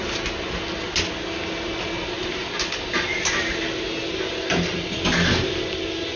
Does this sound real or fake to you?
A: real